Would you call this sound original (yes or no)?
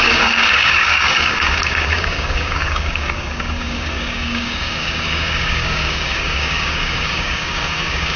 no